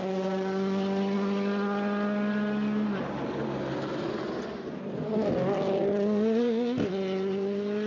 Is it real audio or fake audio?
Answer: real